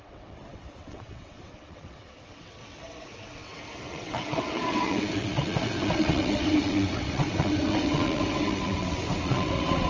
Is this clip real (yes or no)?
no